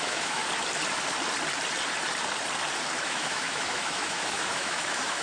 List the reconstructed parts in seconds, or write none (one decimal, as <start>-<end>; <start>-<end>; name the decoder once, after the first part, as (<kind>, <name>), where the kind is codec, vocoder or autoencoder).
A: 0.0-0.4 (autoencoder, DAC-VAE); 3.0-5.2